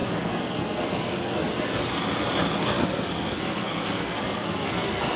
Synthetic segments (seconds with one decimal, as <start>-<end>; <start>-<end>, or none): 0.0-1.5; 2.6-5.2